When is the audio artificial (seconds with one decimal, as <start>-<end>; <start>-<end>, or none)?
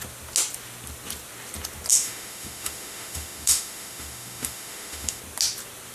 1.9-5.2